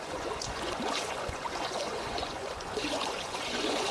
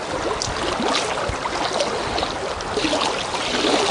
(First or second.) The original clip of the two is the second